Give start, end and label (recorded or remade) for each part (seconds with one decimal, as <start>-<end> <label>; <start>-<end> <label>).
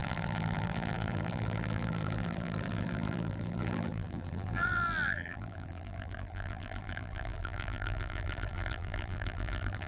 0.0-9.9 remade